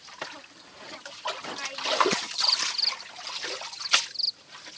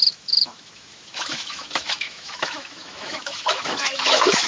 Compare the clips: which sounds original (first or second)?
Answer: first